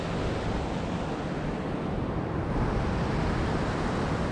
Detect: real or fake real